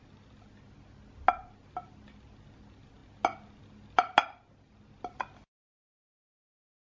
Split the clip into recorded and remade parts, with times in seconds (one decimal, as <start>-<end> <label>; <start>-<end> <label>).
0.0-6.9 recorded